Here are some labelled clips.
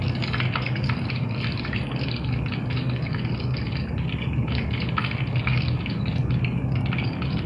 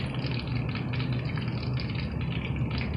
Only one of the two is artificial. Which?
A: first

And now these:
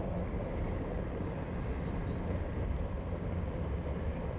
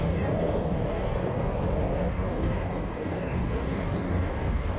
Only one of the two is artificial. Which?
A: second